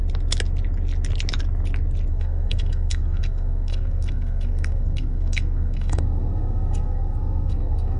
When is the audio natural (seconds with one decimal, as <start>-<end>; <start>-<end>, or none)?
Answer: 0.0-2.1